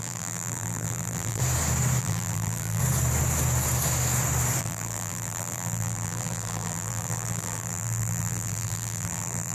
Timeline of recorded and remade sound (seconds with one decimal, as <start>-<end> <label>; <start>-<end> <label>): 0.0-1.4 remade; 1.4-2.0 recorded; 2.0-2.8 remade; 2.8-4.6 recorded; 4.6-9.5 remade